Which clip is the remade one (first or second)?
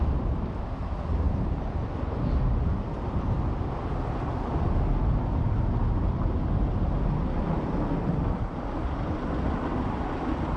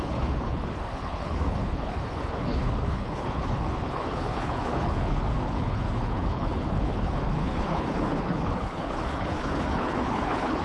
second